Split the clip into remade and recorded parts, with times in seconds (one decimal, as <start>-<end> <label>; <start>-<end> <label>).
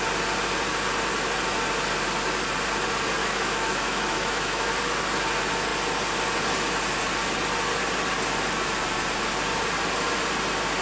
0.0-3.2 recorded; 3.2-4.7 remade; 4.7-10.8 recorded